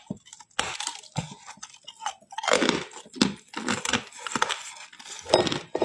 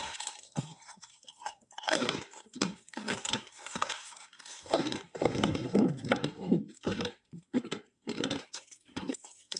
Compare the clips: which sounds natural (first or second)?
first